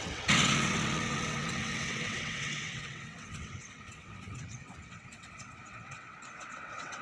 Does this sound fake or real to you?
fake